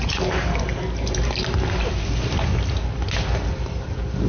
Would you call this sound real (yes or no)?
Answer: yes